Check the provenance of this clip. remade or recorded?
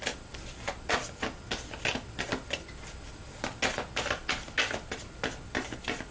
recorded